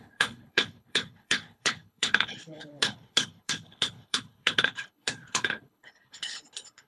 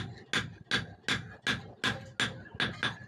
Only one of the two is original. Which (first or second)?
second